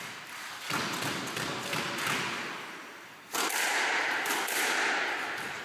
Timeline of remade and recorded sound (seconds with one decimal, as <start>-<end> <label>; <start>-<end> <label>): 0.0-3.7 recorded; 3.7-5.6 remade